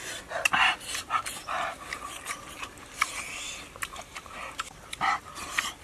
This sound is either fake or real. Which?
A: real